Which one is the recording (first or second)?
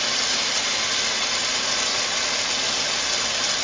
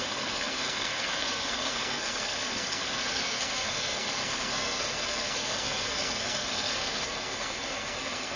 first